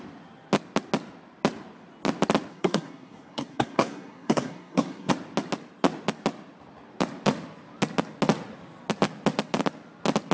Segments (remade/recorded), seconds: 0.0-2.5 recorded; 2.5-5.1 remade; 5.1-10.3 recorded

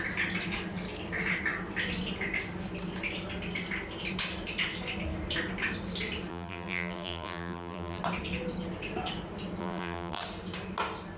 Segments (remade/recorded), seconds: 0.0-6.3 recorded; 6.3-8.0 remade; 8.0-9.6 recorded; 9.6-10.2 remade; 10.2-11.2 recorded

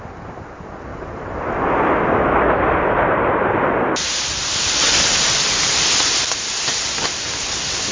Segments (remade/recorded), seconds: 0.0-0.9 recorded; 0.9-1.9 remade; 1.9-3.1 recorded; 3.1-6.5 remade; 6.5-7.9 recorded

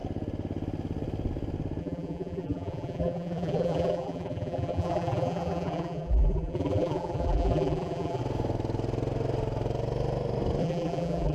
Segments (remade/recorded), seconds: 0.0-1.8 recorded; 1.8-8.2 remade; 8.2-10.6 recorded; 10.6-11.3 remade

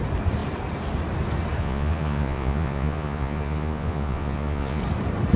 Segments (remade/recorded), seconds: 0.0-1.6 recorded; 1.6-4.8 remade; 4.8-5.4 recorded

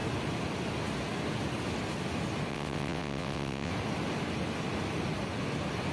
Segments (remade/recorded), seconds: 0.0-2.5 recorded; 2.5-3.7 remade; 3.7-5.9 recorded